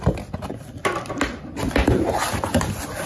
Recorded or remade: recorded